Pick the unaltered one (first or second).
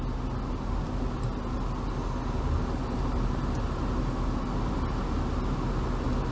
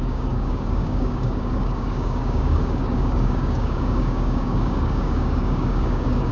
first